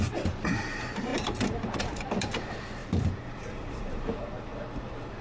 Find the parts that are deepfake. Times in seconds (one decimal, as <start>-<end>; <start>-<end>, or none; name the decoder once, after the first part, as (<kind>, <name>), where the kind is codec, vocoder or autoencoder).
0.0-4.5 (vocoder, BigVGAN v2)